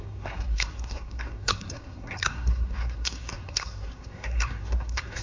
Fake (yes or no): yes